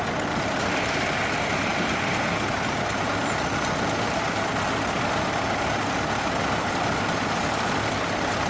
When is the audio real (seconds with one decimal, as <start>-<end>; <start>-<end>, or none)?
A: 0.0-8.5